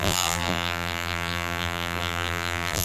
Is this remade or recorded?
remade